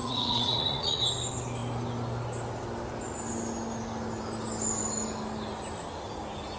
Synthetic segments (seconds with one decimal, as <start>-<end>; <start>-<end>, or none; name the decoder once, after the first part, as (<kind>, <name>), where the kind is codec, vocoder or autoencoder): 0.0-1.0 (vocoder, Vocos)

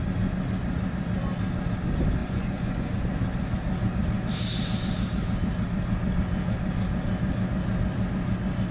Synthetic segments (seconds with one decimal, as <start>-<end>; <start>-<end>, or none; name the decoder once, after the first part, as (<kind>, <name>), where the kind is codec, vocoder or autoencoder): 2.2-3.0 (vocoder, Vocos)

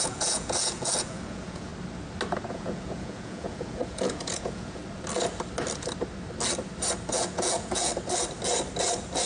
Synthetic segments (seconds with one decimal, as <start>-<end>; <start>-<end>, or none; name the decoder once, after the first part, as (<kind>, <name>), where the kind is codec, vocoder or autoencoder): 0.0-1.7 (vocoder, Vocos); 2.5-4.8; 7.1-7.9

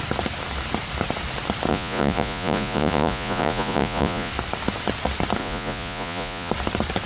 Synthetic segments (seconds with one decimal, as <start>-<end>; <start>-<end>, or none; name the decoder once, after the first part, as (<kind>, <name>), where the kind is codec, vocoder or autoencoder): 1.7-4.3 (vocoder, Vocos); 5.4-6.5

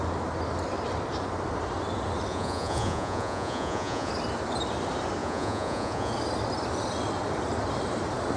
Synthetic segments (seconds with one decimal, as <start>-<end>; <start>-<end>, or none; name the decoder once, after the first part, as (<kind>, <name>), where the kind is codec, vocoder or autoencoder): 2.3-4.1 (vocoder, Vocos); 5.2-6.1

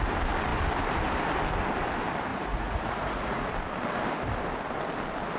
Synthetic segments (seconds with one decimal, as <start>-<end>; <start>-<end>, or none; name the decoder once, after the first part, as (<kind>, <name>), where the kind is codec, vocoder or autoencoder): 2.3-3.5 (vocoder, Vocos)